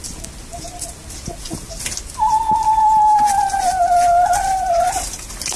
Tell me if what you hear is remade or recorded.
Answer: recorded